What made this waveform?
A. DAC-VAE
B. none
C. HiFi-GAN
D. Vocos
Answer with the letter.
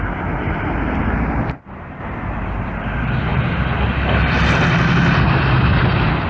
B